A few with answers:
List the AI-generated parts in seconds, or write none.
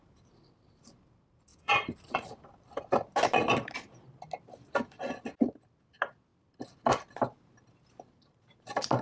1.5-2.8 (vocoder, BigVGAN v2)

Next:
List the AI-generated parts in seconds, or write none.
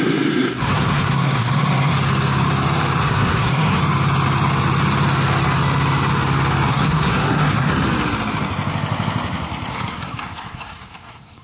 0.0-1.9 (codec, SNAC); 3.0-3.8; 6.7-7.7; 9.7-11.4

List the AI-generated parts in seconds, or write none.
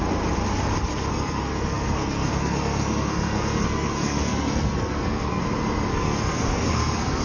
1.1-5.4 (codec, SNAC); 5.9-7.2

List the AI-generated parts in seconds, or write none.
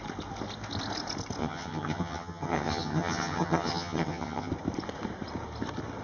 1.4-4.5 (vocoder, HiFi-GAN)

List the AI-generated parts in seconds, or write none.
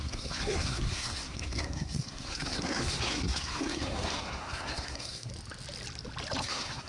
0.0-5.3 (codec, SNAC); 6.4-6.9